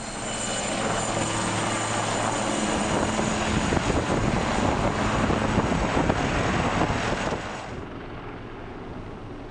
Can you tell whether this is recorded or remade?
recorded